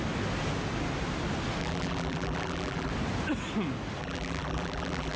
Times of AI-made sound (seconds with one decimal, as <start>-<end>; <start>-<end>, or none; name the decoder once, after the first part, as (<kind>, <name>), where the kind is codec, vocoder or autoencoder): 1.6-2.9 (vocoder, BigVGAN v2); 4.0-5.2